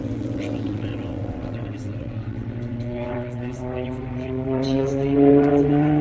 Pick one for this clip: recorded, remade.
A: remade